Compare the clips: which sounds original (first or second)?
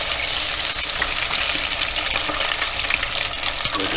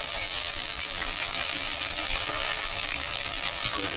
first